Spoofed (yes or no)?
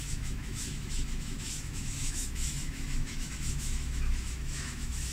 yes